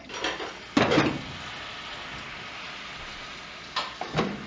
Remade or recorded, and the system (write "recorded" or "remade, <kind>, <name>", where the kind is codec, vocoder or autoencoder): recorded